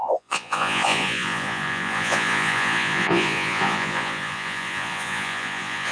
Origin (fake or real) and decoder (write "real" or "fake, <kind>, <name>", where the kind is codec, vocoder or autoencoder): fake, vocoder, Vocos